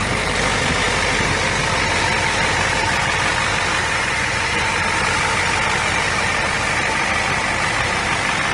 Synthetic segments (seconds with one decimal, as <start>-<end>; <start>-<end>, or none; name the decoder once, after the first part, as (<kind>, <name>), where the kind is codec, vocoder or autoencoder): 3.8-4.7 (vocoder, Vocos)